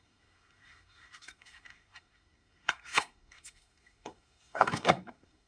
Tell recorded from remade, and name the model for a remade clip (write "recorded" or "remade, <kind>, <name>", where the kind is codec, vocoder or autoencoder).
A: remade, codec, SNAC